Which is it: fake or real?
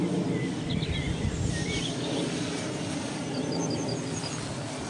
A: fake